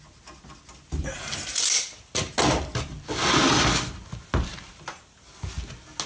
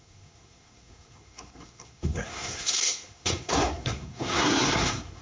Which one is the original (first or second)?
first